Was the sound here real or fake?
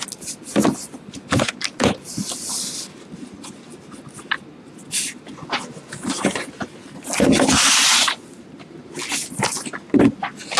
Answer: real